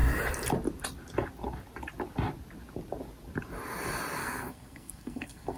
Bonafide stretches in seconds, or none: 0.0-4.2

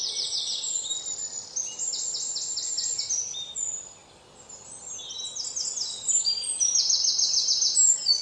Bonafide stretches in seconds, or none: 1.8-8.2

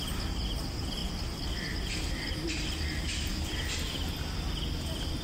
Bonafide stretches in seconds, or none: 0.0-5.2